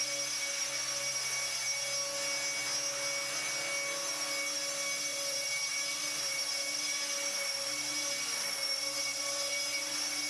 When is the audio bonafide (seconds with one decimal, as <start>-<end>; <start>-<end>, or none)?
0.0-5.1; 6.4-9.1; 9.9-10.3